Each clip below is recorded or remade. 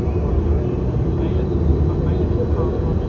recorded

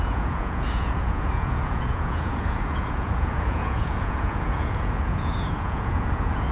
remade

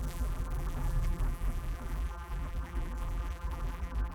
remade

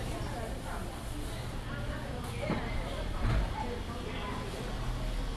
recorded